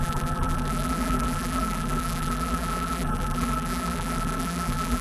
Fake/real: fake